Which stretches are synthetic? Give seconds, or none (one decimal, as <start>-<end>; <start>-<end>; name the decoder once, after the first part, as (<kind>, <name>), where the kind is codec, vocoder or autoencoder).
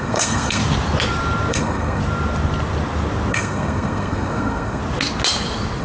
0.0-0.6 (codec, SNAC); 1.5-2.0; 3.3-4.8